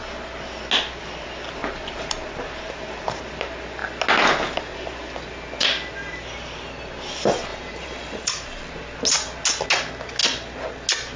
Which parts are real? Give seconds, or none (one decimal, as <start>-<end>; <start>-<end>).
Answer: 0.0-1.6; 3.2-7.5; 8.6-11.2